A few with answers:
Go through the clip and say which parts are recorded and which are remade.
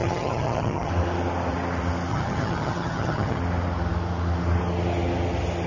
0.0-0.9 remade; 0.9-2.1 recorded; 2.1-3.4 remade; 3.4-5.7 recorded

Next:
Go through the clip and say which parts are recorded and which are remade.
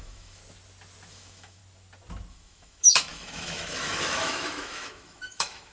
0.0-0.4 remade; 0.4-1.1 recorded; 1.1-1.6 remade; 1.6-2.3 recorded; 2.3-5.7 remade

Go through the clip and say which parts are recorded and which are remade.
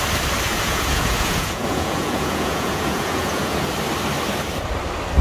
0.0-0.5 recorded; 0.5-3.6 remade; 3.6-5.2 recorded